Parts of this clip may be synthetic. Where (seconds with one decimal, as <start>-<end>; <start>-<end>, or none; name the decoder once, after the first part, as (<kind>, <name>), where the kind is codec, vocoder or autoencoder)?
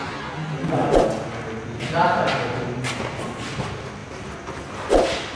none